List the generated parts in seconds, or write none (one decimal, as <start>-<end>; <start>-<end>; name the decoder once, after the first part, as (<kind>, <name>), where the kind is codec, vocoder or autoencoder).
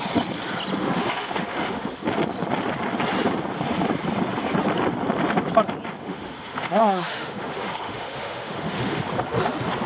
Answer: 0.8-2.0 (autoencoder, DAC-VAE); 6.0-9.0